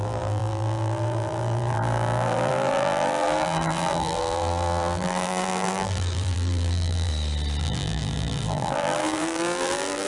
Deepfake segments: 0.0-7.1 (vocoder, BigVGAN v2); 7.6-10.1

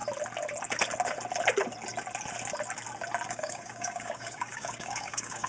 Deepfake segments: 3.3-5.5 (codec, DAC)